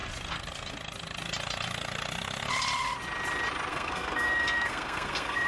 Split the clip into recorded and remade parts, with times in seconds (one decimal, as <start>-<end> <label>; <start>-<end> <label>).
0.0-3.7 recorded; 3.7-5.5 remade